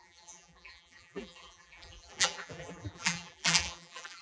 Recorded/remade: remade